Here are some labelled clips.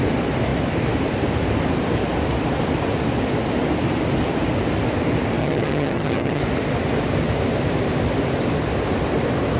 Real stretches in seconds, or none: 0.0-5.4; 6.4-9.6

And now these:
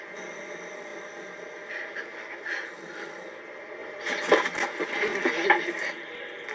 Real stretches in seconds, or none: 0.0-6.5

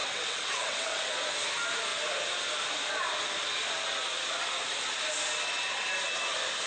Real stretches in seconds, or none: 1.1-6.7

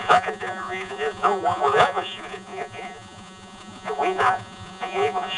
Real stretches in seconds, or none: none